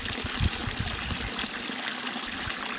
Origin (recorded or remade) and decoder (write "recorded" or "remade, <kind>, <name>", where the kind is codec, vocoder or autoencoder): recorded